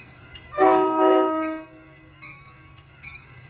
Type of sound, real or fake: fake